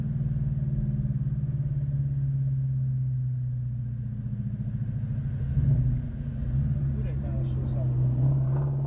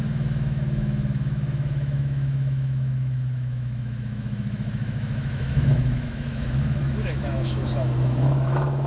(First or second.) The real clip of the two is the first